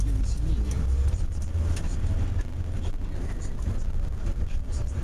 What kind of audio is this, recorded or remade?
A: recorded